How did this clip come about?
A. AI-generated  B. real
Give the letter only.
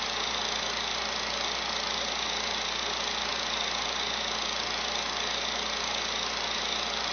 B